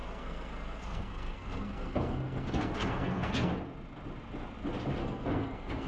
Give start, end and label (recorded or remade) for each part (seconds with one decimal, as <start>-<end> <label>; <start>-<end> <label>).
0.0-3.5 remade; 3.5-5.0 recorded; 5.0-5.9 remade